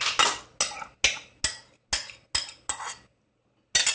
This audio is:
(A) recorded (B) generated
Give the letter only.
A